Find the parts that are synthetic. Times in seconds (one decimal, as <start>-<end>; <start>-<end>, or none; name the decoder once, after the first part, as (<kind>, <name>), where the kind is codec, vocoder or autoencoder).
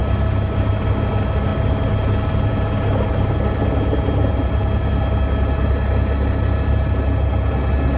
none